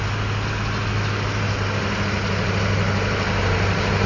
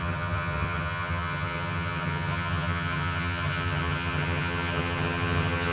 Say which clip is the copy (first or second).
second